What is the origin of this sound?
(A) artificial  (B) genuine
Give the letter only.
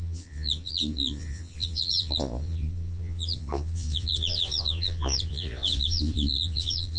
A